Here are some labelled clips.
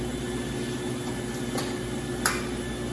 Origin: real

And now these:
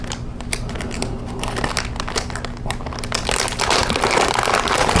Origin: real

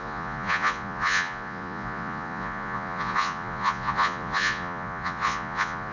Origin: fake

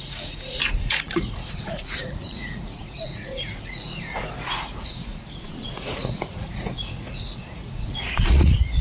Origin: fake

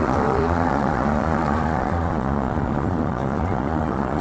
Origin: fake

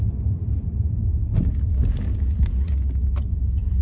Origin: real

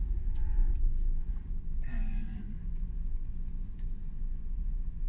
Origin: fake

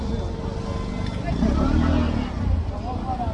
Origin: real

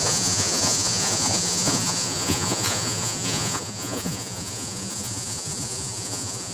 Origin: fake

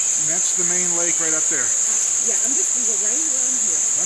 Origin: real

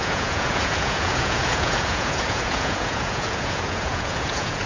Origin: fake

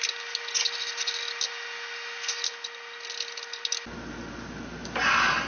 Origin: real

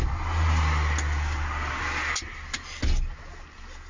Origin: real